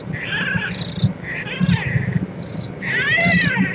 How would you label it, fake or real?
real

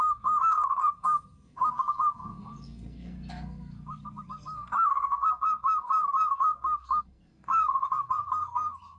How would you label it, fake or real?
fake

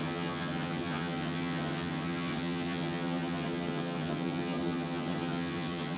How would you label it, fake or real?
fake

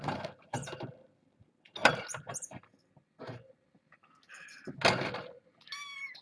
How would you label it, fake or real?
real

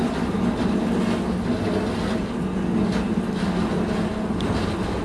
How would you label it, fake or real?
real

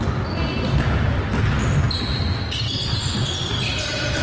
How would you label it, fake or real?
real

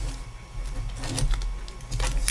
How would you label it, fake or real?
real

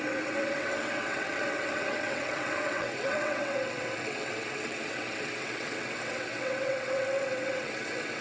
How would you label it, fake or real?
fake